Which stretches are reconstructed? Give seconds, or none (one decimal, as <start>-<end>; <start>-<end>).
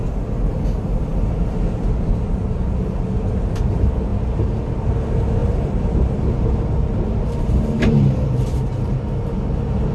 4.1-4.8; 5.4-9.0